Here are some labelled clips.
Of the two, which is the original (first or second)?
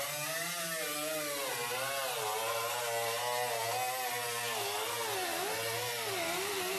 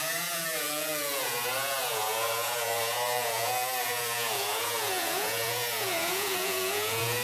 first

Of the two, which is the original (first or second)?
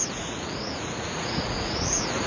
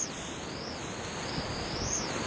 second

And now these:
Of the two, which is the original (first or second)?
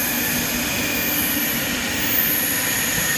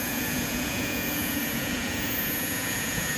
first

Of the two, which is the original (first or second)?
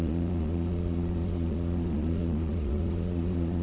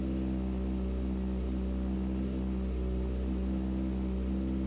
second